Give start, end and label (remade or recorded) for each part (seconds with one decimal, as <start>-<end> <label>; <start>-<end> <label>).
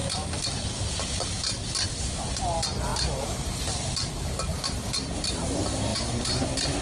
0.0-4.5 recorded; 4.5-5.3 remade; 5.3-5.9 recorded; 5.9-6.8 remade